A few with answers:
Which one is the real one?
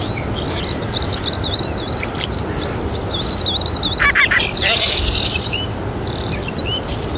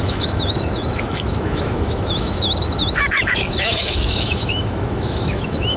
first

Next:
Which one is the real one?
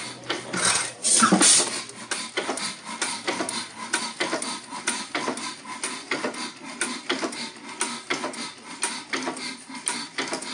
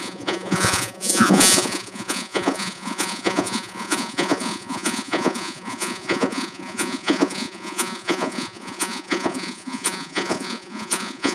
first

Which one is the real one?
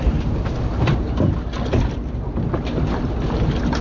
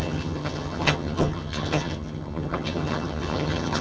first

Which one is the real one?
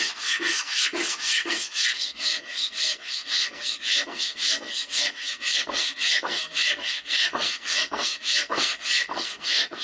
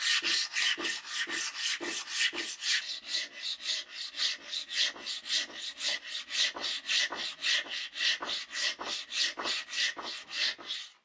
second